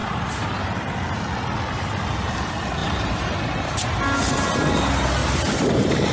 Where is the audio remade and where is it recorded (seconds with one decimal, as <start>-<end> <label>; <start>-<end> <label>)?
0.0-0.8 remade; 0.8-2.8 recorded; 2.8-3.8 remade; 3.8-5.2 recorded; 5.2-6.1 remade